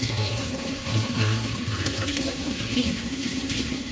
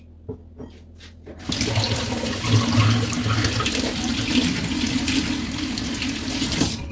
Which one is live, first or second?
second